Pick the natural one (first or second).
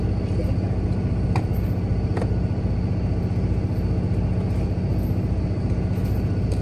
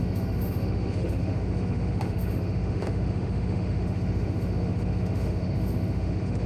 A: first